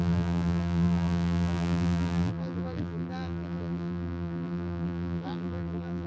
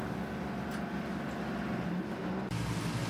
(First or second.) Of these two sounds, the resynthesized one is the first